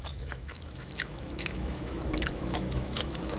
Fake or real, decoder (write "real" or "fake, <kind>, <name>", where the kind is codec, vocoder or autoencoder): fake, autoencoder, DAC-VAE